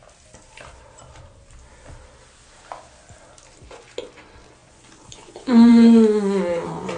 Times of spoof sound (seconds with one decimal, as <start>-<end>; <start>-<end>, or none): 4.6-5.7